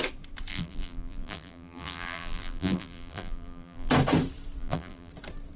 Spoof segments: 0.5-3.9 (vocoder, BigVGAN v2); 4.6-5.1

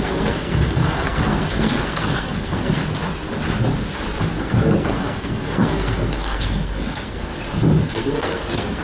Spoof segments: 0.0-2.8 (codec, SNAC); 4.4-7.3; 7.8-8.8